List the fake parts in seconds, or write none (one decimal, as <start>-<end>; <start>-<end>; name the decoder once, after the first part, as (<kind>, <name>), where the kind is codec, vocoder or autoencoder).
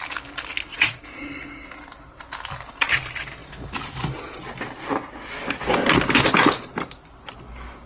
0.7-1.3 (vocoder, Vocos)